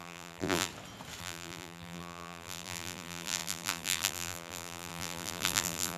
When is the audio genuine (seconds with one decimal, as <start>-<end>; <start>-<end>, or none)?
0.7-1.2